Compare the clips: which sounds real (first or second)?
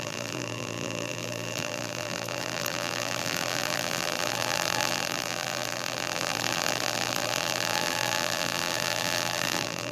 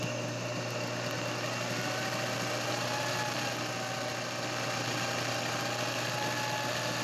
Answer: second